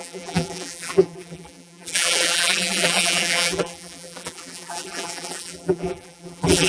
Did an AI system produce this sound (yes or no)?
yes